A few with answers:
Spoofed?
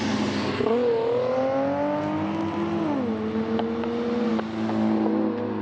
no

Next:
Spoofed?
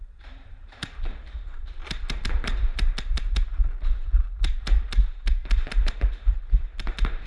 yes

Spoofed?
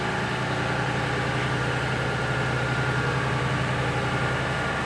no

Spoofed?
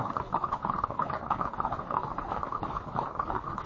yes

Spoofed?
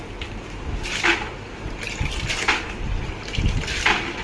no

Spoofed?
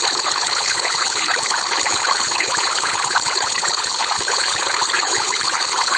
yes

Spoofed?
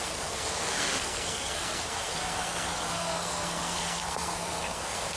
yes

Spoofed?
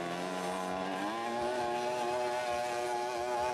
no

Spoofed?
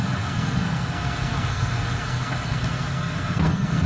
yes